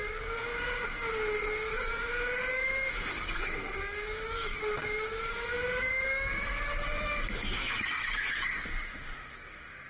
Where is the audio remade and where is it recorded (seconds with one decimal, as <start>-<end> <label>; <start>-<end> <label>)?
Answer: 0.0-9.9 remade